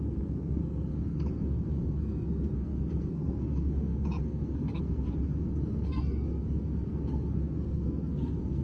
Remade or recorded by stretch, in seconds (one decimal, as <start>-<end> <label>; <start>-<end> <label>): 0.0-8.6 remade